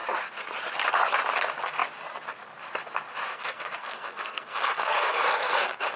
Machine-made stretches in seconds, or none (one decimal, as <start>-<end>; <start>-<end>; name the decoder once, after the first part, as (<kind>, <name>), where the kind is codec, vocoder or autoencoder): 3.3-6.0 (codec, SNAC)